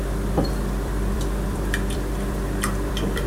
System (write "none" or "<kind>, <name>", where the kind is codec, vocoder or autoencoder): vocoder, BigVGAN v2